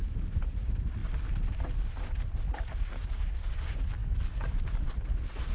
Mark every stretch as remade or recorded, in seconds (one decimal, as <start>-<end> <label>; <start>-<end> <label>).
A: 0.0-4.0 recorded; 4.0-4.5 remade; 4.5-5.5 recorded